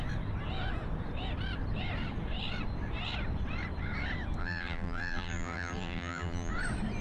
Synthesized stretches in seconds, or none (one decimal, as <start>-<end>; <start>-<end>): 4.4-6.5